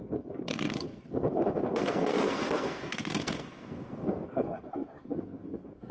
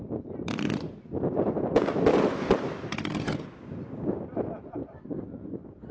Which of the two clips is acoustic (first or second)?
second